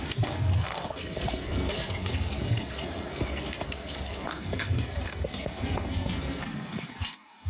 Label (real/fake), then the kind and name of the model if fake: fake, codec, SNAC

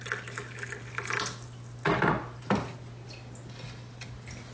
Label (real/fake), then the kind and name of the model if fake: real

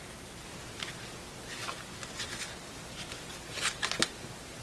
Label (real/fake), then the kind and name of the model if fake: real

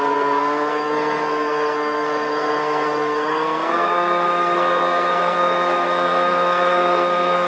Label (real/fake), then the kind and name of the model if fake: fake, codec, SNAC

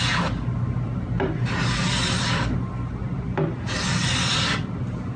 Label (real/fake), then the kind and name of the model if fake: real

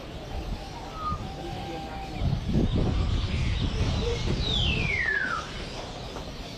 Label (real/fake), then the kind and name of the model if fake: real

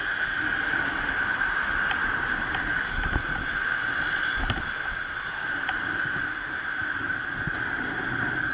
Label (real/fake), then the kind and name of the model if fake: real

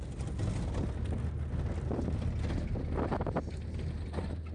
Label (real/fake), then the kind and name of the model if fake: real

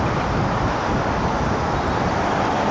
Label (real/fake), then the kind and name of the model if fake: real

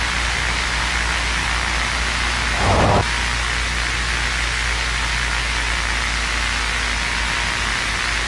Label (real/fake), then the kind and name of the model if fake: real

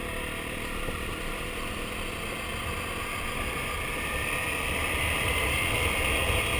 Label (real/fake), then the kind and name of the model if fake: real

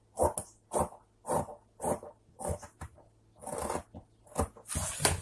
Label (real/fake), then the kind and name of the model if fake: real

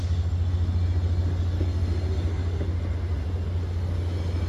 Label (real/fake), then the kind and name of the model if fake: real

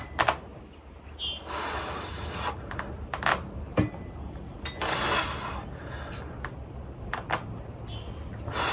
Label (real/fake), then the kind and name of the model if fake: real